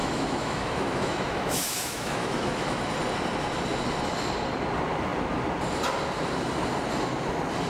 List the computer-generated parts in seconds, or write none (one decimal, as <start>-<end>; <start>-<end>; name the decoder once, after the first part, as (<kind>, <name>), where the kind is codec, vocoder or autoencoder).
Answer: 0.0-2.8 (autoencoder, DAC-VAE)